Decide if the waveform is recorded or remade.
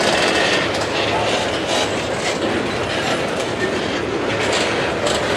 recorded